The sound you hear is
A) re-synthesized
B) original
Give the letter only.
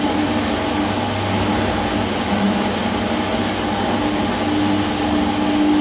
B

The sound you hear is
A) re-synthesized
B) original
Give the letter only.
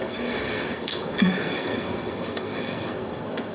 A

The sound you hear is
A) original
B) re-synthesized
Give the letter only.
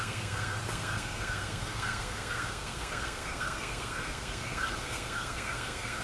B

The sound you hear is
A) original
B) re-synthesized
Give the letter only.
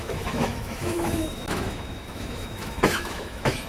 B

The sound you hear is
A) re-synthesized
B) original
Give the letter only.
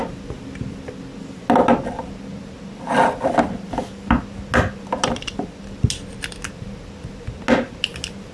B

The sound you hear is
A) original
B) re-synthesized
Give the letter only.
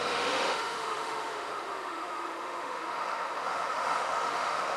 B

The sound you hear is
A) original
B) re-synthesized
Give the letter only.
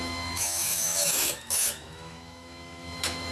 B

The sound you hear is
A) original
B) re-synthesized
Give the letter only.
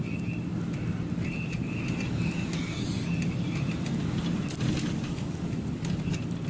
A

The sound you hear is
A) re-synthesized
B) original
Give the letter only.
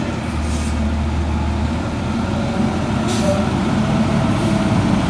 B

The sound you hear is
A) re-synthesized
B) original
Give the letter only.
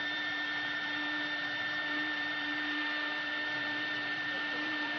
A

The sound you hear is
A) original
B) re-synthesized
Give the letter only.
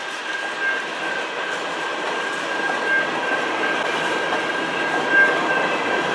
A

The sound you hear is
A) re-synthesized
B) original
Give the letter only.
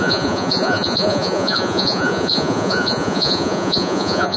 A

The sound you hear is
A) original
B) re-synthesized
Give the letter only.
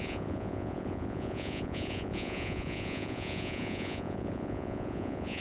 B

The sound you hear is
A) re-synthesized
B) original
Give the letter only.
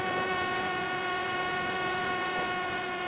A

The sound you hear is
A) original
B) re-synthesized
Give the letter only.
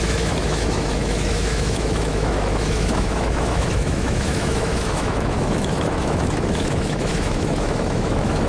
B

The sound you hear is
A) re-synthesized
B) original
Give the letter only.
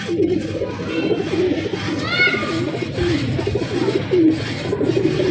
B